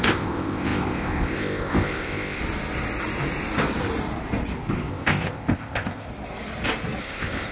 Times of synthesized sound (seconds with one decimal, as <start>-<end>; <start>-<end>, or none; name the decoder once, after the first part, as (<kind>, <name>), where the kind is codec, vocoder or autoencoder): 0.0-2.4 (codec, ZipCodec); 4.9-6.1; 7.0-7.5

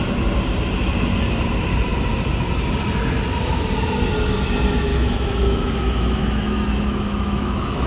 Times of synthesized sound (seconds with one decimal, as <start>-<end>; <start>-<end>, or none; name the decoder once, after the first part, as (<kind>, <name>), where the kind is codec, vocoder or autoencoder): 4.9-7.9 (autoencoder, DAC-VAE)

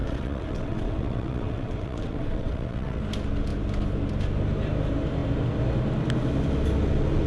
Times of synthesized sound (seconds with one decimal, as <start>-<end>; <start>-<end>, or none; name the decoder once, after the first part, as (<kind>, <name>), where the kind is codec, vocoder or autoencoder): 0.0-3.0 (vocoder, WaveNeXt)

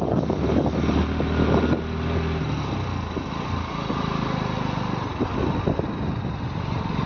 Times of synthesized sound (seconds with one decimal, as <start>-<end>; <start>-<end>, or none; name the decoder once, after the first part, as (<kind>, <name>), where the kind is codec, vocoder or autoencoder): none

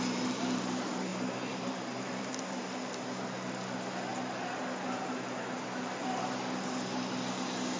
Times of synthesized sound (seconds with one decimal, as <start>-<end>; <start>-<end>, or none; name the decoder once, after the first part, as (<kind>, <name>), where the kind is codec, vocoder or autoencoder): 1.1-2.6 (vocoder, BigVGAN v2)

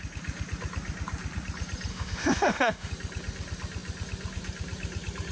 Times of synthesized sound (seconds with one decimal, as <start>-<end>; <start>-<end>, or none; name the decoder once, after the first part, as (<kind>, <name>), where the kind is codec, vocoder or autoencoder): 1.9-2.9 (autoencoder, DAC-VAE)

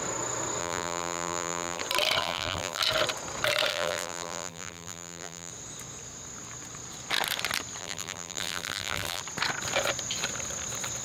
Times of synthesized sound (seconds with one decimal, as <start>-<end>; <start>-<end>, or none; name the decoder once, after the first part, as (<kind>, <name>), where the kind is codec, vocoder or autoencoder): 0.6-1.8 (vocoder, BigVGAN v2); 2.2-2.8; 3.7-5.5; 7.8-9.2

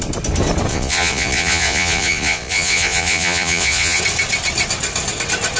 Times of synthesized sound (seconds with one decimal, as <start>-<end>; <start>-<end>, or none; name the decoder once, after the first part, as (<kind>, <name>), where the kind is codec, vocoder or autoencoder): 0.7-4.0 (vocoder, Vocos)